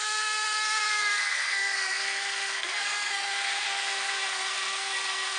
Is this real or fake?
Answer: fake